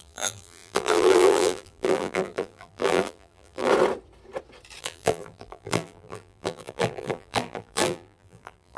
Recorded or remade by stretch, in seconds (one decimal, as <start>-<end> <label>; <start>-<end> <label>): 0.0-3.7 remade; 3.7-4.8 recorded; 4.8-8.8 remade